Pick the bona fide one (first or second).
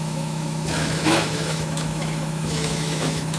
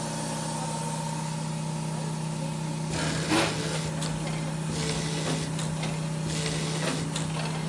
second